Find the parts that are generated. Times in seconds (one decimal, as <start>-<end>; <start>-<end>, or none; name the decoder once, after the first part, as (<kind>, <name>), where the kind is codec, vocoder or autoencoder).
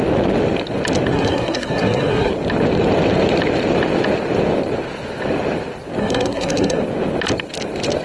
1.1-2.3 (codec, SNAC); 6.0-6.8